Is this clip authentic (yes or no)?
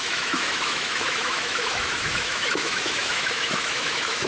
no